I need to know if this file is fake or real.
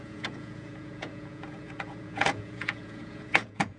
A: fake